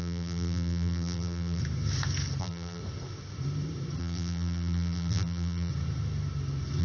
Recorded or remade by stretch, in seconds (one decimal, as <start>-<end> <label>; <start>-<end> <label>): 0.0-1.6 remade; 1.6-2.4 recorded; 2.4-2.8 remade; 2.8-4.0 recorded; 4.0-5.7 remade; 5.7-6.8 recorded